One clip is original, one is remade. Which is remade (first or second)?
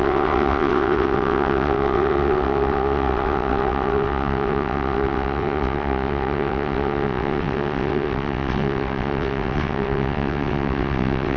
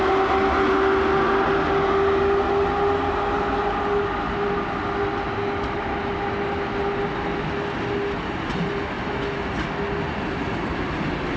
first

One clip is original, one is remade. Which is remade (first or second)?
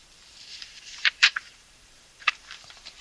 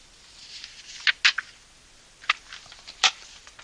first